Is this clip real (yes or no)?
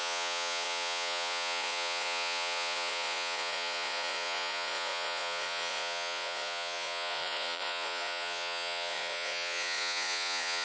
no